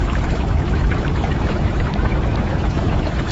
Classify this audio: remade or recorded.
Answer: remade